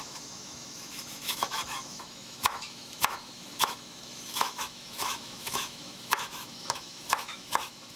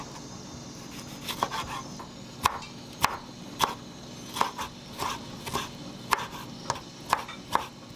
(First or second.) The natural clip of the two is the second